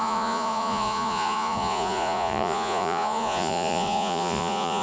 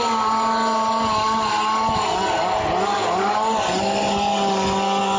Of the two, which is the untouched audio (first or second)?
second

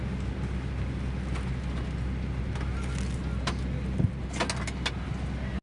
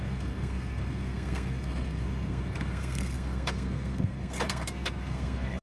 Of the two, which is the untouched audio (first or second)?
first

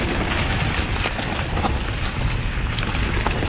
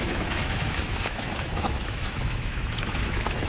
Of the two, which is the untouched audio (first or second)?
first